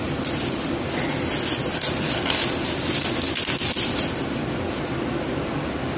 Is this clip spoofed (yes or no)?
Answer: no